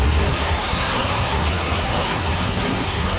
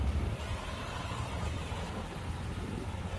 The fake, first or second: first